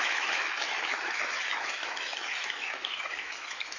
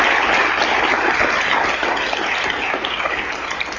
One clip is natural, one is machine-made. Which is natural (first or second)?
second